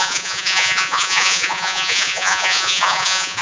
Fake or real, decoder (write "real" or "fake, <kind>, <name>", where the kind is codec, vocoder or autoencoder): fake, vocoder, Vocos